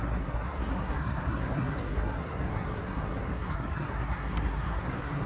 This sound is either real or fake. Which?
fake